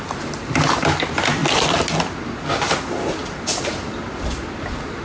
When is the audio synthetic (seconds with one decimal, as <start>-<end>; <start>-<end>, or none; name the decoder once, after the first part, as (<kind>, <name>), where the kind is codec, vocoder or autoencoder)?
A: none